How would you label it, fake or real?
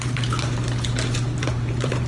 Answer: fake